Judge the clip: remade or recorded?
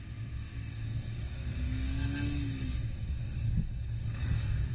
remade